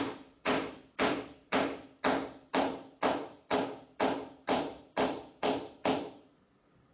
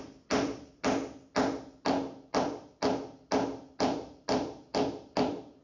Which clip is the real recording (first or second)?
second